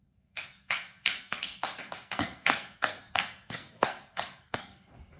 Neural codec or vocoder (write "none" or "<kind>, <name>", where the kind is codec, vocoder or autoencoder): codec, SNAC